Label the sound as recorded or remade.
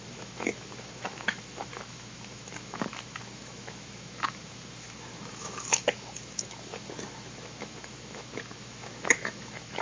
remade